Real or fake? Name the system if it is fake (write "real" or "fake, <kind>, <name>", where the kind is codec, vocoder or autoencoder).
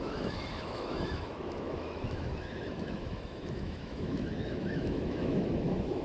fake, autoencoder, DAC-VAE